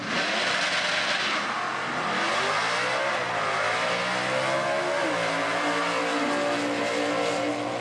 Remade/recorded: recorded